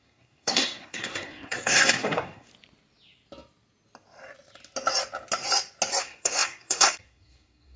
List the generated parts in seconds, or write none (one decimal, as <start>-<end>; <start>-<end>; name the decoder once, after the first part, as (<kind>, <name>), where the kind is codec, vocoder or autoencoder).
0.0-2.5 (codec, SNAC); 6.0-7.8